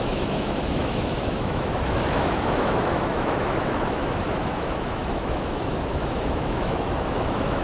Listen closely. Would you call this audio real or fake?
fake